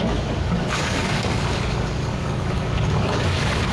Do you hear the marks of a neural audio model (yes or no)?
yes